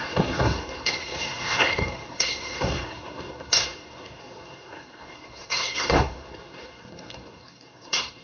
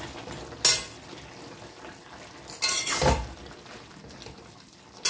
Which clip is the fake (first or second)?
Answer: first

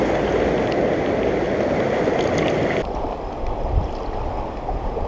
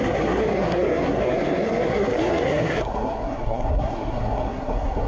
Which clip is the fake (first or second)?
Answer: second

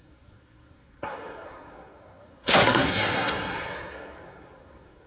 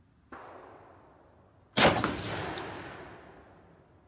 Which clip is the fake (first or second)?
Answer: first